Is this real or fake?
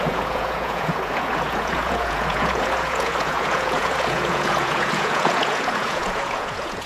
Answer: fake